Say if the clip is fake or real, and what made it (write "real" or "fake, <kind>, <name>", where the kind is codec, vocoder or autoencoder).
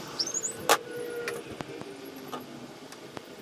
real